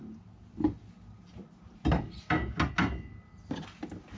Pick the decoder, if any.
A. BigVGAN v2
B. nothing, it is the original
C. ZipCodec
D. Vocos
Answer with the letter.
B